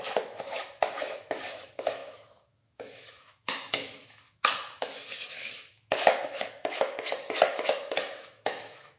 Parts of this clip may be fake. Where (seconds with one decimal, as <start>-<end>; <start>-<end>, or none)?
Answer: 0.0-9.0